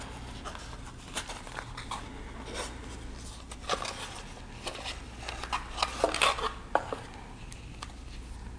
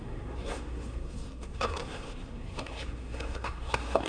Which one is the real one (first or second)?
first